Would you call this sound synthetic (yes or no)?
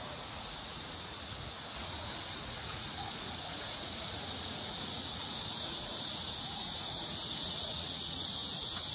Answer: yes